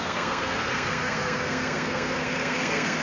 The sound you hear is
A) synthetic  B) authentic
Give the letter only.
A